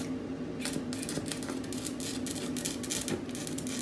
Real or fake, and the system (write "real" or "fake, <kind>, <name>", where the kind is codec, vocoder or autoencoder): real